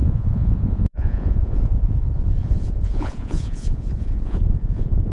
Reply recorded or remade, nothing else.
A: remade